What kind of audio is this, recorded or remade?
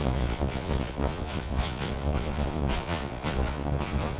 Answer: remade